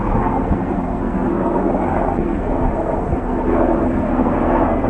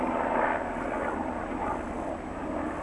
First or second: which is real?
second